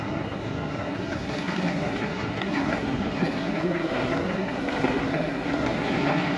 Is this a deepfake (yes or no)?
yes